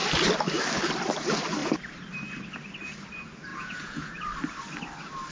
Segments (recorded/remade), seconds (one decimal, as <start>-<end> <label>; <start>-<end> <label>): 0.0-3.5 recorded; 3.5-4.2 remade; 4.2-5.3 recorded